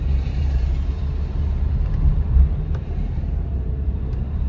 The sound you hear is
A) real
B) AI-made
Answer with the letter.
B